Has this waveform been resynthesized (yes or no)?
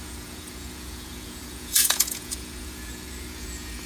yes